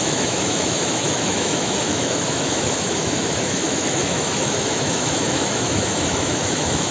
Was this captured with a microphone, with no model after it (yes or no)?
no